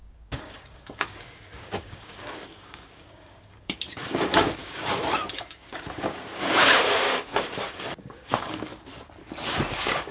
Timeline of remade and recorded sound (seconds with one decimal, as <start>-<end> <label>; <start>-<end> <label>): 0.0-8.7 remade; 8.7-9.7 recorded; 9.7-10.1 remade